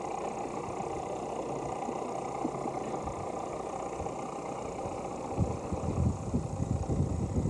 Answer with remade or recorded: recorded